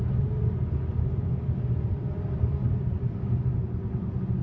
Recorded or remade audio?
recorded